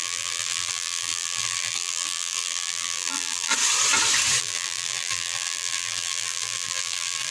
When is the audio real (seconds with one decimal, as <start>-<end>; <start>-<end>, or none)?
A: 3.5-4.4